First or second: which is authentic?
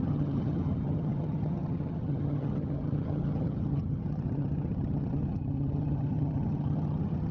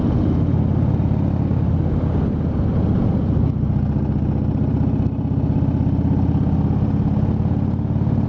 second